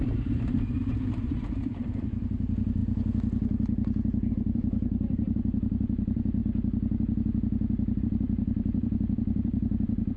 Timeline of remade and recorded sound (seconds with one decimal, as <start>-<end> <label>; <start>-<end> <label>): 0.0-2.8 remade; 2.8-4.3 recorded; 4.3-6.4 remade; 6.4-8.0 recorded; 8.0-10.2 remade